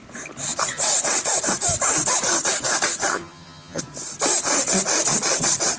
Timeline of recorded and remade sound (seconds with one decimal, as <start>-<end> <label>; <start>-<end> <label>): 0.0-3.1 recorded; 3.1-3.8 remade; 3.8-5.8 recorded